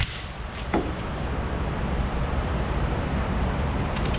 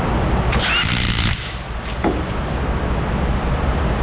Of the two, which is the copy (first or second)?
first